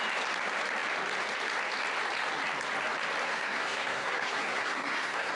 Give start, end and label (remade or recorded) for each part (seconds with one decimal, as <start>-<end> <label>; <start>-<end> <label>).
0.0-3.2 recorded; 3.2-5.3 remade